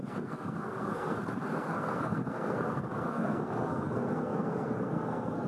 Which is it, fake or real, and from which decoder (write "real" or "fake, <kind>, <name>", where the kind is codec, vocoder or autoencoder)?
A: fake, codec, SNAC